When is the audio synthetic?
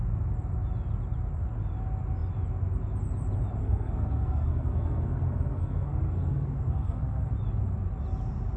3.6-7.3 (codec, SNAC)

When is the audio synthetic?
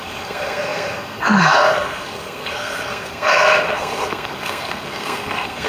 0.0-5.7 (codec, SNAC)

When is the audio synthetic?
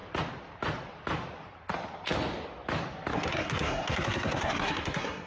3.1-5.3 (codec, SNAC)